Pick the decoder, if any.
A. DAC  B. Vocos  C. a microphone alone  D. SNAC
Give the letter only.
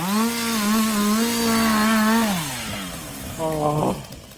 C